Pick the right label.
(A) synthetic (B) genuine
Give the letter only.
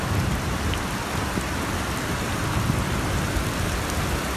B